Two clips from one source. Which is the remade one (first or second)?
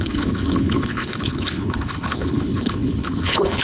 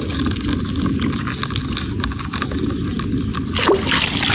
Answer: first